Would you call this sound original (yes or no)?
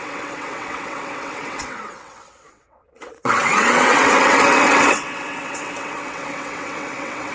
no